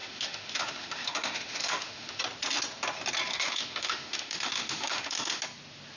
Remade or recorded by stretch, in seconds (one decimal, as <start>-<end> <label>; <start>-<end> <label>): 0.0-2.2 remade; 2.2-3.3 recorded; 3.3-5.4 remade; 5.4-6.0 recorded